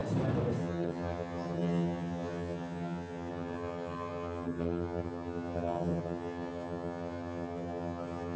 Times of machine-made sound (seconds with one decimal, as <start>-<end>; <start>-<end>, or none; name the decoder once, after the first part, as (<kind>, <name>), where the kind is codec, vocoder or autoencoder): 0.6-8.4 (vocoder, HiFi-GAN)